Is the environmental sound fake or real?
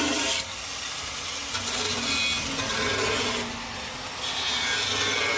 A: real